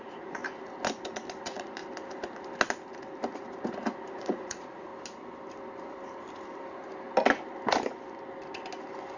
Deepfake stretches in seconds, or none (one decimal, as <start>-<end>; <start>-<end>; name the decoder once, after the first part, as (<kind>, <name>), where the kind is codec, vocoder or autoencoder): 0.0-0.4 (vocoder, Vocos); 1.4-1.8; 4.2-4.9